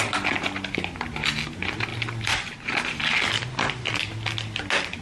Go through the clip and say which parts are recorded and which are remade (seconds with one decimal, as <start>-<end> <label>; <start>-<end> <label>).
0.0-1.9 recorded; 1.9-3.2 remade; 3.2-5.0 recorded